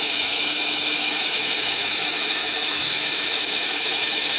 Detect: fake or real fake